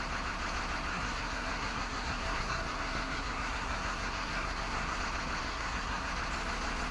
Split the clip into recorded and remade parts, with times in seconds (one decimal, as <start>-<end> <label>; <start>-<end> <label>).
0.0-0.9 recorded; 0.9-5.0 remade; 5.0-5.4 recorded; 5.4-6.1 remade; 6.1-6.9 recorded